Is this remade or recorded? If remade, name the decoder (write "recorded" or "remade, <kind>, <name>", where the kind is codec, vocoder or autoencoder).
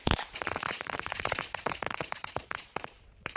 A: remade, vocoder, Vocos